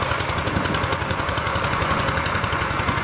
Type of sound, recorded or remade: remade